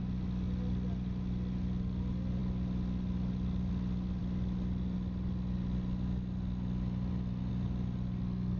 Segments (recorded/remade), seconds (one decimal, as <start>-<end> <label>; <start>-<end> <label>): 0.0-8.6 recorded

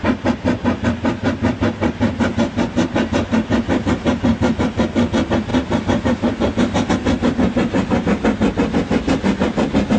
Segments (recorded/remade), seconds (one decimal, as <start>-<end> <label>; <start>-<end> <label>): 0.0-10.0 recorded